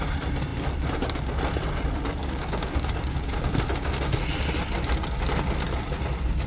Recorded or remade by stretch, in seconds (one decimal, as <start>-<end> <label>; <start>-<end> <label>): 0.0-2.2 recorded; 2.2-3.6 remade; 3.6-6.5 recorded